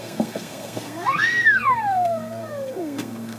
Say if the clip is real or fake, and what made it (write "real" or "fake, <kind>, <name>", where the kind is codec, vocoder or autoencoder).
fake, codec, SNAC